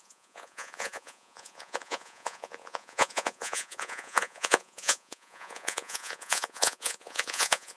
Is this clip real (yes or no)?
no